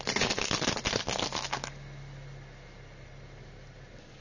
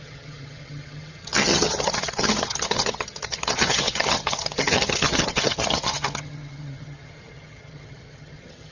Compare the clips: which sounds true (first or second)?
first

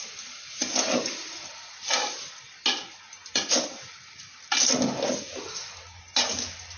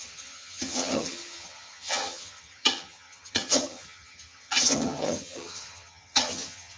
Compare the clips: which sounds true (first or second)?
first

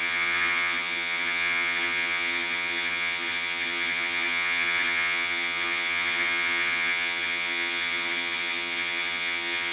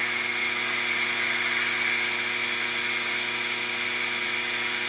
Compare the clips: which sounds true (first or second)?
second